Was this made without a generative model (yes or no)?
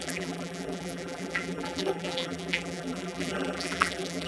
no